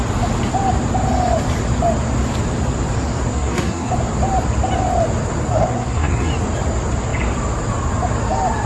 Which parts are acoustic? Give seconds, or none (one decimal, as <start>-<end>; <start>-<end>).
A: 0.0-3.3; 3.9-5.5; 6.3-8.7